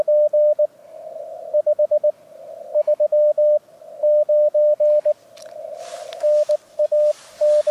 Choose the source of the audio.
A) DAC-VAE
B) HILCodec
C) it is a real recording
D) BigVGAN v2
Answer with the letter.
C